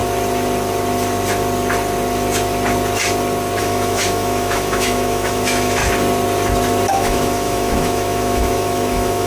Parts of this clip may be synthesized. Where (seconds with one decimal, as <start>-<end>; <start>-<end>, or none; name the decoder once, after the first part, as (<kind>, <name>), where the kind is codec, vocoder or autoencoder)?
3.6-5.8 (autoencoder, DAC-VAE); 6.9-9.3